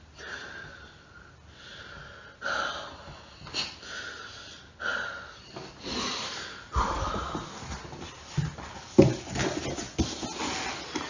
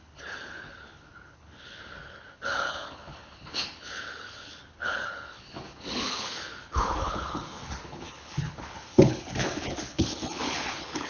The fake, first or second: second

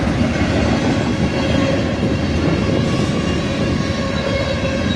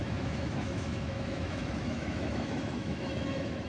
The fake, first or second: second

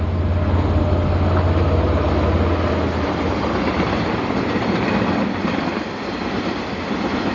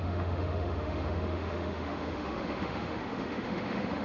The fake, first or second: second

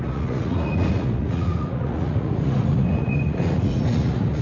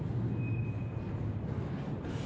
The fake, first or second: first